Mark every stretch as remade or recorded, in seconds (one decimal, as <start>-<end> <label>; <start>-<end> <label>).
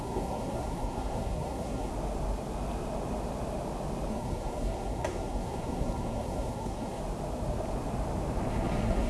0.0-1.9 remade; 1.9-4.1 recorded; 4.1-7.0 remade; 7.0-8.5 recorded; 8.5-9.1 remade